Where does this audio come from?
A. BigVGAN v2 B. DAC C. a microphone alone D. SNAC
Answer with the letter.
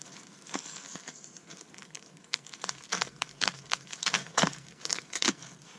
D